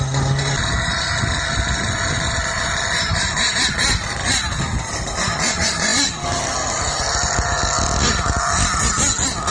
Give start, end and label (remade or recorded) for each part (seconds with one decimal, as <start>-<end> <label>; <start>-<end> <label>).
0.0-9.5 recorded